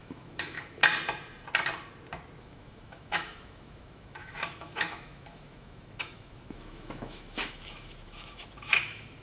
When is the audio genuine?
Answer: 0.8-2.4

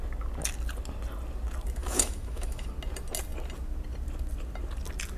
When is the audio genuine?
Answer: 0.0-1.8; 2.7-5.2

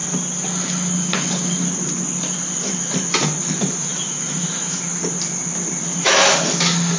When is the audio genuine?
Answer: 0.0-3.6; 5.0-6.0

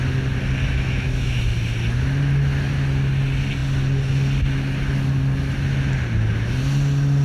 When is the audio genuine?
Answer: 0.0-0.6; 1.4-7.2

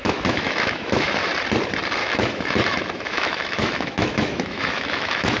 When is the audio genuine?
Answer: 1.3-2.0

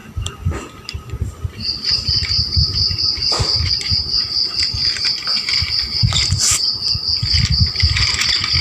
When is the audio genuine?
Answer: 0.0-8.6

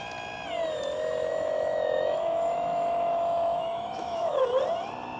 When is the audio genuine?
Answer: 0.0-1.3; 4.4-5.2

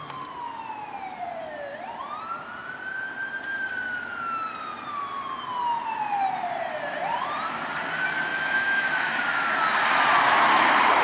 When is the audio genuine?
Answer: 0.0-8.3; 9.4-11.0